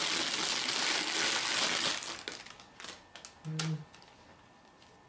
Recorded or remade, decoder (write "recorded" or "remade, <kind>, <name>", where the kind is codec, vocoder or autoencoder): recorded